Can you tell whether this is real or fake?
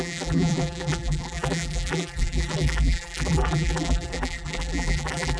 fake